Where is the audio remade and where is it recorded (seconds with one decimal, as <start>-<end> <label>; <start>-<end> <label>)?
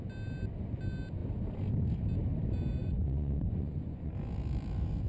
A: 0.0-2.8 recorded; 2.8-4.1 remade; 4.1-5.1 recorded